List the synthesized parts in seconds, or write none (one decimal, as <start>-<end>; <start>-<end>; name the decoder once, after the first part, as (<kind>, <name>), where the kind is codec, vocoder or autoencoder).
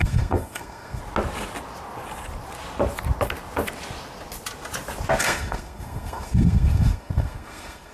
0.0-1.0 (codec, SNAC); 5.2-7.9